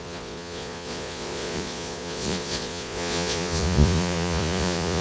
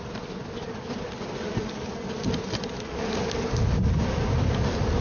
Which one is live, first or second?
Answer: second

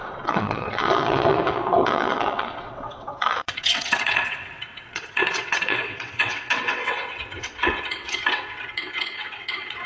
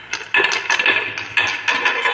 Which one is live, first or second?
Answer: second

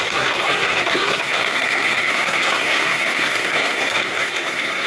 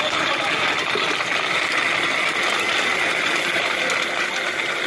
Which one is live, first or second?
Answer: second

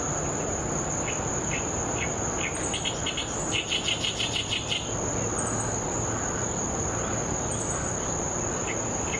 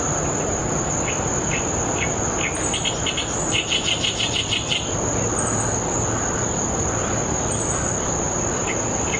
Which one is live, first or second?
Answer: first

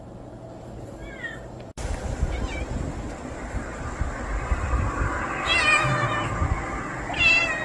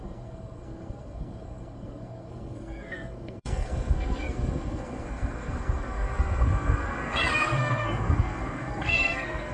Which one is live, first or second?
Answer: first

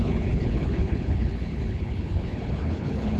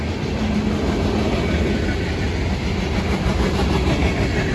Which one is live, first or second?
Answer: second